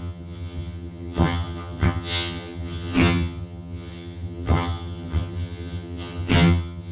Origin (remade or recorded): remade